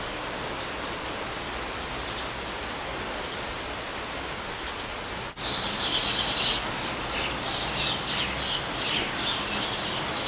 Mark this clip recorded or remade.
recorded